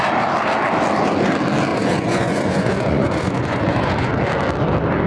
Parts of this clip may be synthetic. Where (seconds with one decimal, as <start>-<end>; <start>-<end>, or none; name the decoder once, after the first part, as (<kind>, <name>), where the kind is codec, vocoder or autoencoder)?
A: 1.7-4.1 (vocoder, Vocos)